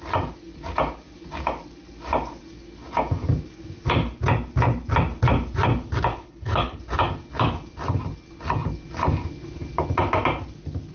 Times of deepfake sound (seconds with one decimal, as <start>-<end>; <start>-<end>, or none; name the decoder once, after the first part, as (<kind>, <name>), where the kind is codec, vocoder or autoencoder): 6.1-6.8 (codec, HILCodec)